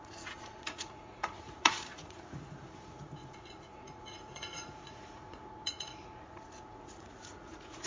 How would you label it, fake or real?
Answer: fake